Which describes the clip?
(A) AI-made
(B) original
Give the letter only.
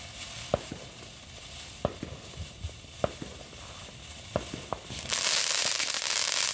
B